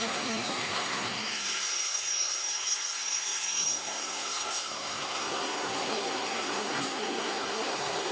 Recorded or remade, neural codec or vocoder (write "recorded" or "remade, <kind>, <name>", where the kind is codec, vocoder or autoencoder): remade, codec, SNAC